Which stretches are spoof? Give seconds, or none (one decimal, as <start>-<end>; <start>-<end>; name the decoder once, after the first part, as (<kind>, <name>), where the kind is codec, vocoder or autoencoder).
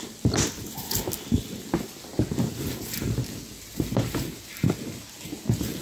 none